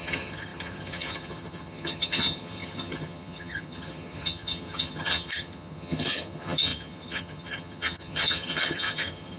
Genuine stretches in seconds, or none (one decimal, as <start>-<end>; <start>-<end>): none